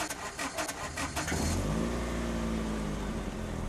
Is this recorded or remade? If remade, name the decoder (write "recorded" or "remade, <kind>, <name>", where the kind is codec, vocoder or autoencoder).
recorded